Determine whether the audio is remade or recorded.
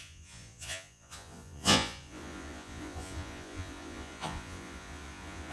remade